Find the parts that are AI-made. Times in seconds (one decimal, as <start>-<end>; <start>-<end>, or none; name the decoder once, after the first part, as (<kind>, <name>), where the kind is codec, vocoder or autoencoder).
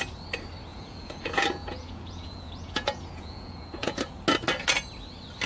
0.7-4.0 (vocoder, Vocos)